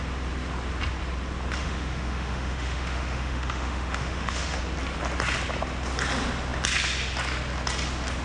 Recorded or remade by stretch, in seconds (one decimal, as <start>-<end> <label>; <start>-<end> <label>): 0.0-1.6 recorded; 1.6-4.6 remade; 4.6-8.2 recorded